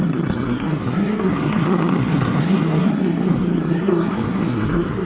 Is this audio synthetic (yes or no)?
yes